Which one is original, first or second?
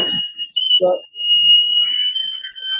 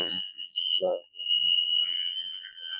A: first